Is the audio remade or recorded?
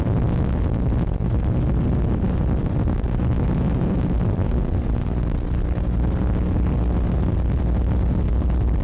recorded